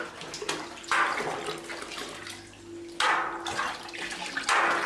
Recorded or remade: recorded